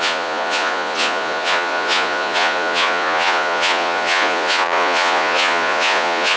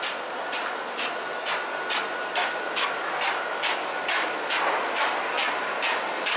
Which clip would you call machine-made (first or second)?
first